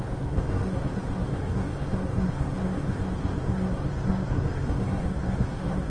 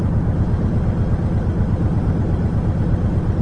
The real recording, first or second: second